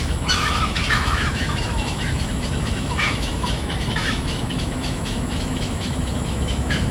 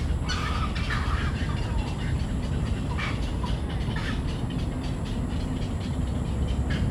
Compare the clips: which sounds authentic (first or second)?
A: second